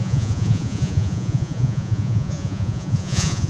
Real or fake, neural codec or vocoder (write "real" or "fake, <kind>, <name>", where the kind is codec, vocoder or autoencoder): fake, vocoder, Vocos